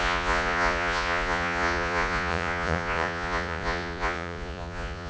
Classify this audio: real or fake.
fake